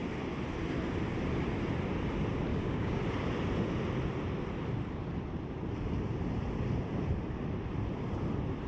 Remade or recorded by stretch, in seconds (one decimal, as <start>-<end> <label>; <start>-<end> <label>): 0.0-2.5 recorded; 2.5-3.0 remade; 3.0-8.7 recorded